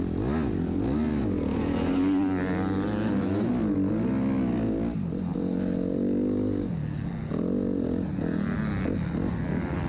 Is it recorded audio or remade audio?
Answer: recorded